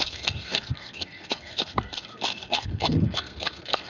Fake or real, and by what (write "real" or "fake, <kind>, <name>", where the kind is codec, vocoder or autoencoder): fake, codec, SNAC